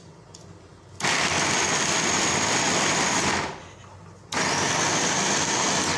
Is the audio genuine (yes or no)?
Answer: yes